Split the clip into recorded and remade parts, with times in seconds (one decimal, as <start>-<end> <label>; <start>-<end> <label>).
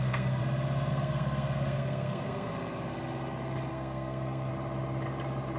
0.0-0.4 remade; 0.4-0.9 recorded; 0.9-2.5 remade; 2.5-3.7 recorded; 3.7-4.5 remade; 4.5-5.6 recorded